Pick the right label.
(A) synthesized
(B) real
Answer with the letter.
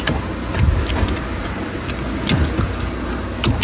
B